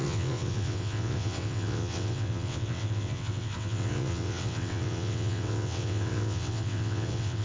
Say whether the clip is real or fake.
fake